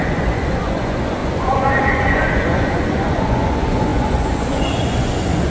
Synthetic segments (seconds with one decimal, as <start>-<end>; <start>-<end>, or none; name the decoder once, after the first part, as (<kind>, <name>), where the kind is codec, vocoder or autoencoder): 0.0-5.5 (vocoder, Vocos)